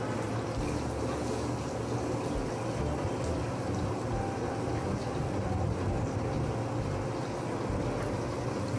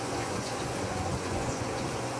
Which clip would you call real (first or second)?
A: first